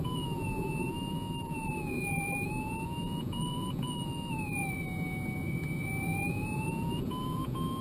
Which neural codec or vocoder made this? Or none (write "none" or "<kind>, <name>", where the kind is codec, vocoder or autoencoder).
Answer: vocoder, Vocos